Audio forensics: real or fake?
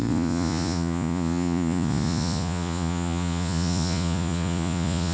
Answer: fake